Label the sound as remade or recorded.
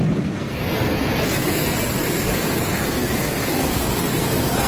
remade